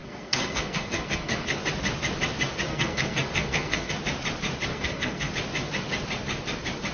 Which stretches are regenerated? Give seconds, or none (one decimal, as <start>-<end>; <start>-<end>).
0.0-1.6; 2.7-3.9; 4.7-5.3